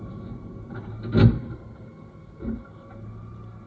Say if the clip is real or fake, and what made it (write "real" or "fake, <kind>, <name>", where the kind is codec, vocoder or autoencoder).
real